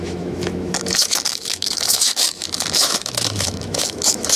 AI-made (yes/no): yes